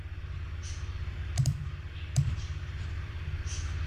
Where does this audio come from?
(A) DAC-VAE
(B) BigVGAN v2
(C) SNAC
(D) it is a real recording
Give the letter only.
B